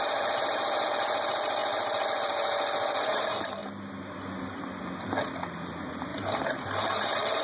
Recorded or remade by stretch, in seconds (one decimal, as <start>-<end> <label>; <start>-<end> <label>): 0.0-1.6 remade; 1.6-3.0 recorded; 3.0-3.6 remade; 3.6-5.5 recorded; 5.5-7.4 remade